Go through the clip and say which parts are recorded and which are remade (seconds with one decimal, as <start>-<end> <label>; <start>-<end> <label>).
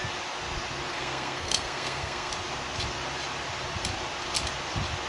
0.0-0.9 recorded; 0.9-2.3 remade; 2.3-5.1 recorded